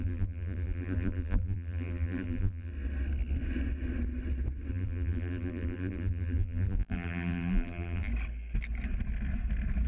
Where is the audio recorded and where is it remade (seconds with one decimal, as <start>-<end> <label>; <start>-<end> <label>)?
0.0-2.7 remade; 2.7-4.7 recorded; 4.7-8.1 remade; 8.1-9.9 recorded